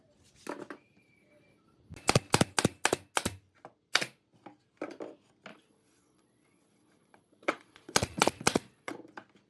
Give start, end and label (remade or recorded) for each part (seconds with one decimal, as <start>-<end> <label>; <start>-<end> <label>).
0.0-5.5 recorded; 5.5-8.9 remade; 8.9-9.5 recorded

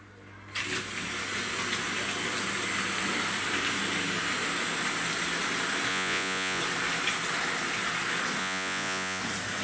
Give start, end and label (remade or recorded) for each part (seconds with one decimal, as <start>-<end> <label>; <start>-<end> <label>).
0.0-5.9 recorded; 5.9-6.6 remade; 6.6-8.4 recorded; 8.4-9.2 remade; 9.2-9.6 recorded

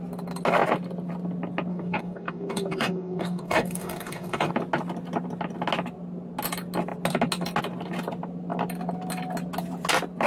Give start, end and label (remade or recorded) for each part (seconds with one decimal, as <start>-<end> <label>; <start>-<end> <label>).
0.0-1.7 recorded; 1.7-4.5 remade; 4.5-10.3 recorded